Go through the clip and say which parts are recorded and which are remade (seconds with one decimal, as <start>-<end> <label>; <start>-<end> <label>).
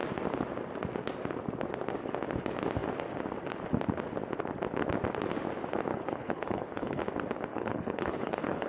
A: 0.0-5.9 recorded; 5.9-7.0 remade; 7.0-7.5 recorded; 7.5-8.7 remade